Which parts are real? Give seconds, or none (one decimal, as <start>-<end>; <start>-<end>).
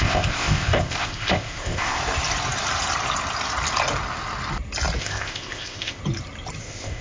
2.0-5.0; 6.0-6.6